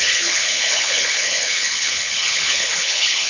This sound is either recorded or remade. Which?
remade